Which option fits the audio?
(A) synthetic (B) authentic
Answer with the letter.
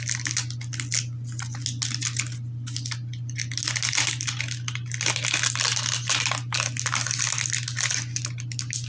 B